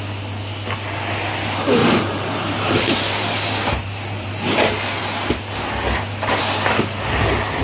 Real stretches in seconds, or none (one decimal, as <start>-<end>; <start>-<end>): 0.0-1.8; 4.6-7.6